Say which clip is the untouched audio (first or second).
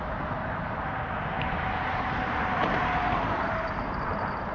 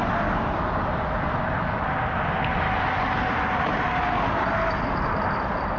second